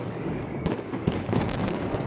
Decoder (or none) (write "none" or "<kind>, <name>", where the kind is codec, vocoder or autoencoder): codec, DAC